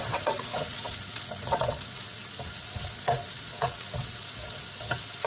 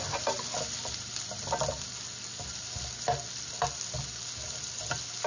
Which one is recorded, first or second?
second